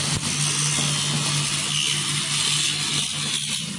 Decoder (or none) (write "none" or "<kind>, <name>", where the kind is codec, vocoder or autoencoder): none